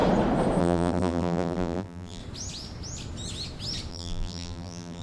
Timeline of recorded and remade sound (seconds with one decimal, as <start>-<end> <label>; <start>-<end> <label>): 0.0-0.6 recorded; 0.6-2.2 remade; 2.2-3.9 recorded; 3.9-5.0 remade